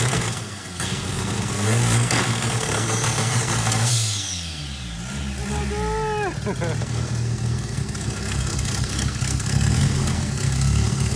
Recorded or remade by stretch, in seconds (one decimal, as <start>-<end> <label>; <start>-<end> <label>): 0.0-4.6 remade; 4.6-6.8 recorded; 6.8-11.2 remade